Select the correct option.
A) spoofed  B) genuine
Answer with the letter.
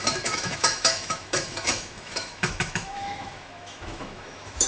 A